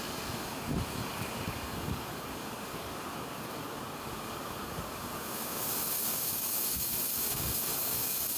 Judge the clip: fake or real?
fake